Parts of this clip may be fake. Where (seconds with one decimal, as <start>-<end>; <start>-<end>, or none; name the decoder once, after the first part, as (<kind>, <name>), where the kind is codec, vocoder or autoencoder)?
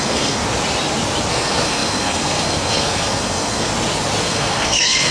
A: 0.0-0.4 (codec, SNAC); 1.3-3.7; 4.2-5.1